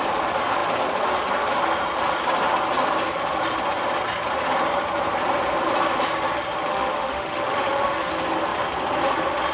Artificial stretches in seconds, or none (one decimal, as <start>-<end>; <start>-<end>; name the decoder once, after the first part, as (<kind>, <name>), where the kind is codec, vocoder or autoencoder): 6.7-8.1 (autoencoder, DAC-VAE)